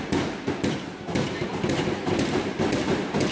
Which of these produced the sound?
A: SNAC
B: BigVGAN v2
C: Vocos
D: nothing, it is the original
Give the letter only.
D